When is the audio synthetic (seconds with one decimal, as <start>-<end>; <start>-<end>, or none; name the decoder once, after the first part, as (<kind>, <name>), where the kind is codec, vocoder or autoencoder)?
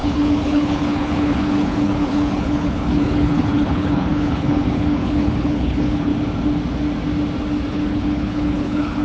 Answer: 0.0-6.1 (codec, HILCodec); 7.7-9.0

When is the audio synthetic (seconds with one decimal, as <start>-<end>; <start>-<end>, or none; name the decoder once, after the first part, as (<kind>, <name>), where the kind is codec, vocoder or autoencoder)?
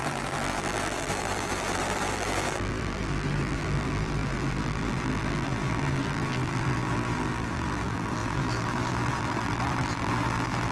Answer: 0.0-10.7 (vocoder, BigVGAN v2)